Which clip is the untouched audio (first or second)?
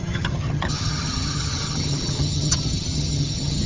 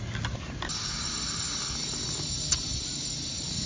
second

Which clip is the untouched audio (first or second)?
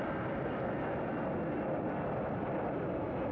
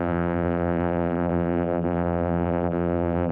first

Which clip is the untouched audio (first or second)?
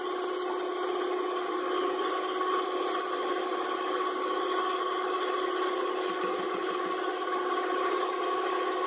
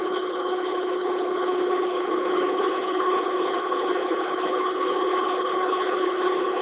first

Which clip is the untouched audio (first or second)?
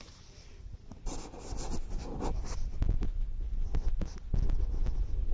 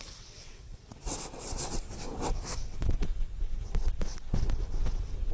first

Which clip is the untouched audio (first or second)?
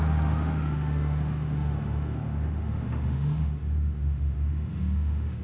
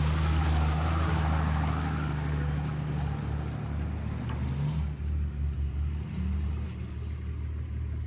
second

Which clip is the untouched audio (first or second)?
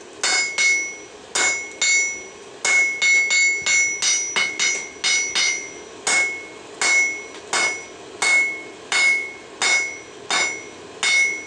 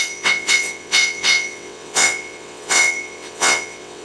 first